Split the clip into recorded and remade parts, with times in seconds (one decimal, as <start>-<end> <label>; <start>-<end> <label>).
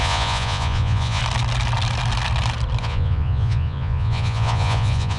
0.0-1.2 remade; 1.2-2.8 recorded; 2.8-5.2 remade